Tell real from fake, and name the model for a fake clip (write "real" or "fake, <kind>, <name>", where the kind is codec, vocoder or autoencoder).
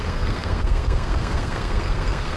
fake, codec, SNAC